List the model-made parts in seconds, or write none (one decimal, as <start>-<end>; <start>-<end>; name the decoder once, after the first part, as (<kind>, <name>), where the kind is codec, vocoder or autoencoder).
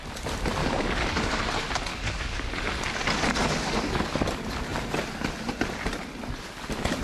0.6-1.4 (codec, DAC); 1.9-2.5; 3.4-4.3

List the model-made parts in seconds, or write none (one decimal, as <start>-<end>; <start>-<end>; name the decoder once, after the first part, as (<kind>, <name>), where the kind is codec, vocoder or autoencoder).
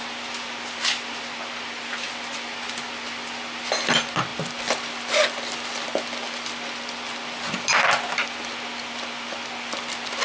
none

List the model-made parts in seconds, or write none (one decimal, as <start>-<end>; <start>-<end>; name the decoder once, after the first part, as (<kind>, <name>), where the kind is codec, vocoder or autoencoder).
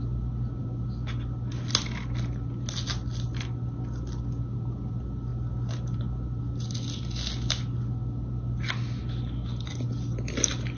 none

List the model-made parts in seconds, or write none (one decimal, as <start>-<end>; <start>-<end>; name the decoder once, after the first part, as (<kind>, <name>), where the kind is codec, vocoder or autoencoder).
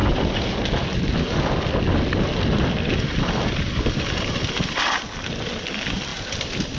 none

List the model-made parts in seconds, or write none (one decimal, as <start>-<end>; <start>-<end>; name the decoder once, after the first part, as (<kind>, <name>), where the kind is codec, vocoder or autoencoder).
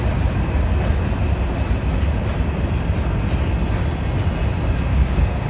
4.9-5.5 (codec, DAC)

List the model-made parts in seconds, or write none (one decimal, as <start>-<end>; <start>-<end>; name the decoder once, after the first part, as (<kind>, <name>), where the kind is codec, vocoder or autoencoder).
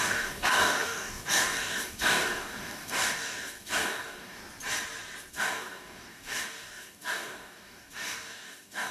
0.0-4.4 (codec, DAC); 5.3-8.9